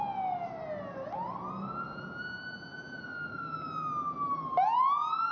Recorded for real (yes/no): yes